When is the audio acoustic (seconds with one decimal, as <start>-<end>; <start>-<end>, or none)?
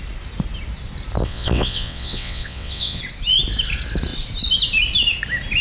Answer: 0.0-1.2; 3.0-5.6